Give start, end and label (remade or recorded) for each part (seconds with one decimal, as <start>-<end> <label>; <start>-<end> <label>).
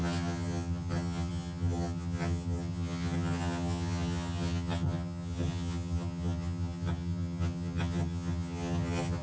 0.0-9.2 remade